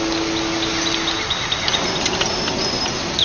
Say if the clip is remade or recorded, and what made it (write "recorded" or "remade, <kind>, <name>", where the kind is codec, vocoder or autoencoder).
recorded